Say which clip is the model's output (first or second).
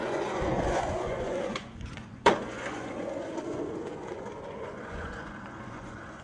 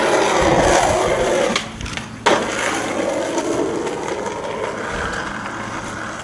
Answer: first